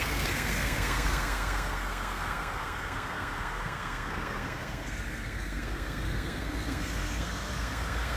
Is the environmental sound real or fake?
fake